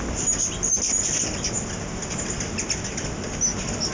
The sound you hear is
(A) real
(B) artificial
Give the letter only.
A